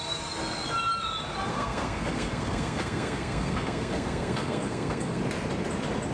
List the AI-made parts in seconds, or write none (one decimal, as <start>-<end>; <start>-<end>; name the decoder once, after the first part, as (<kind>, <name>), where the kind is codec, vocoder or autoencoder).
1.5-5.2 (codec, SNAC)